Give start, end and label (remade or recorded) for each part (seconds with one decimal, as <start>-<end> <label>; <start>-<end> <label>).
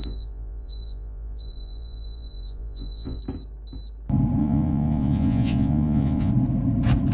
0.0-3.2 remade; 3.2-4.4 recorded; 4.4-6.3 remade; 6.3-7.1 recorded